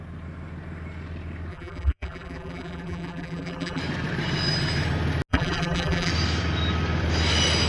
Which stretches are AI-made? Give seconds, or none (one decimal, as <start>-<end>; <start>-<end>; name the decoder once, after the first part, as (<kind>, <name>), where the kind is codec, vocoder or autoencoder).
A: 1.5-3.8 (vocoder, BigVGAN v2); 5.3-6.1